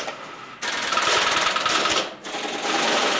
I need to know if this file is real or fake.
real